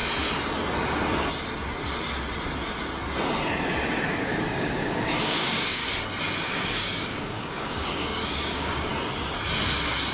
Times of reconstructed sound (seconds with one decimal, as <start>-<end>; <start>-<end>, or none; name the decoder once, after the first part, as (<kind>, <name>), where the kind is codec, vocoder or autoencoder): 4.1-5.8 (codec, DAC); 6.4-8.9